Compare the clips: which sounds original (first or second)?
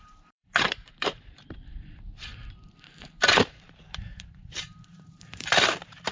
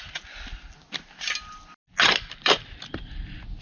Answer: second